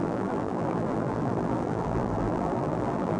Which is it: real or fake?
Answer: fake